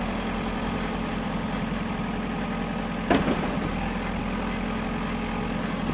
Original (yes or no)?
yes